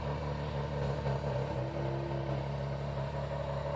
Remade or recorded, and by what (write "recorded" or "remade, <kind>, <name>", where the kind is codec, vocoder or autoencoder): recorded